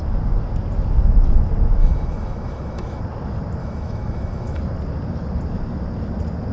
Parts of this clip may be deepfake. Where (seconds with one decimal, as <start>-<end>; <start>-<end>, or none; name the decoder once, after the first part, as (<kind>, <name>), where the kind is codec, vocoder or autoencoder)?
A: 1.8-3.0 (autoencoder, DAC-VAE); 3.6-4.6